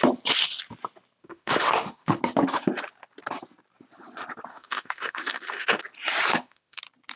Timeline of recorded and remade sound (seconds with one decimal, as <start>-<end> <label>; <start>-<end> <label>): 0.0-1.2 recorded; 1.2-2.2 remade; 2.2-4.5 recorded; 4.5-5.8 remade; 5.8-6.3 recorded; 6.3-6.8 remade; 6.8-7.2 recorded